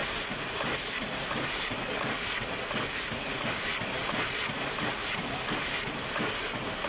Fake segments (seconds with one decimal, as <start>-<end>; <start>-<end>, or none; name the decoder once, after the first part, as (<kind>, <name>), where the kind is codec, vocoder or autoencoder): none